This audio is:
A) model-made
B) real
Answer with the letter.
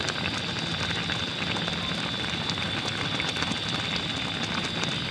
B